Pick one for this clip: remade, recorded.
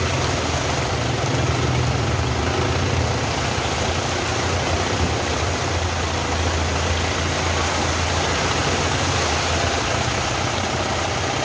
recorded